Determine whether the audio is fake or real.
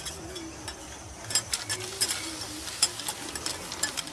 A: real